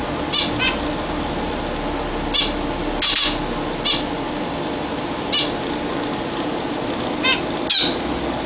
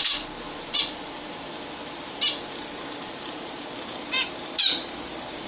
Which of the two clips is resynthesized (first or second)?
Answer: second